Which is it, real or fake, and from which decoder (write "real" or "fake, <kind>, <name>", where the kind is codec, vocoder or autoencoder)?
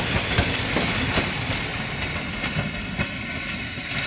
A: real